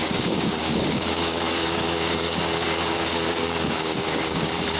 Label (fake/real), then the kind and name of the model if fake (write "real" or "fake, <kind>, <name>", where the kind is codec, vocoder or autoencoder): fake, codec, DAC